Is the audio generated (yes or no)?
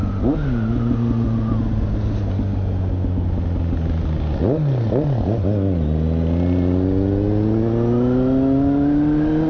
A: no